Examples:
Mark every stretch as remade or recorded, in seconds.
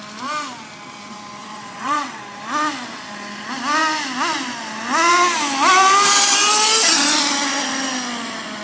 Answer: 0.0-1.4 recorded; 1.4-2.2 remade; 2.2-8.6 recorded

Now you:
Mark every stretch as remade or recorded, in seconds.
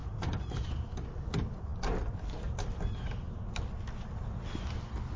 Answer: 0.0-0.7 remade; 0.7-5.2 recorded